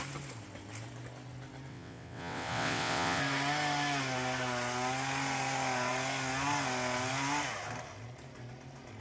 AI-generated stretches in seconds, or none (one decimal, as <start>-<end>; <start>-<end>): 1.7-3.2